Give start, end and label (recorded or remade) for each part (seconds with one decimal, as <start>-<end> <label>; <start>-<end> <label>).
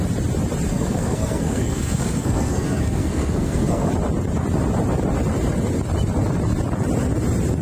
0.0-0.7 recorded; 0.7-3.9 remade; 3.9-7.6 recorded